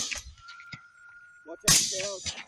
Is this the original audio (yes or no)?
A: yes